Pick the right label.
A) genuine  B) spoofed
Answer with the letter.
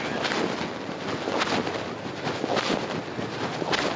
A